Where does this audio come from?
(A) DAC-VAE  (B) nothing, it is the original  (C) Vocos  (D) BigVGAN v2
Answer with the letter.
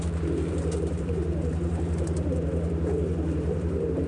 D